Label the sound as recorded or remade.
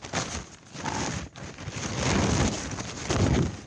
recorded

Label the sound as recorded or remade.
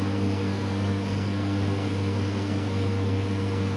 remade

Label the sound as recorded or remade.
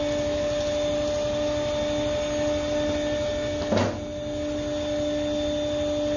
recorded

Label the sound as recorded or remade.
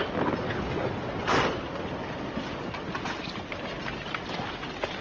recorded